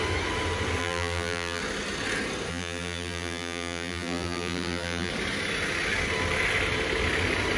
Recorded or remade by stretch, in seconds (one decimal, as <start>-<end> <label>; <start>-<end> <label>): 0.0-0.8 recorded; 0.8-1.6 remade; 1.6-2.5 recorded; 2.5-5.1 remade; 5.1-7.6 recorded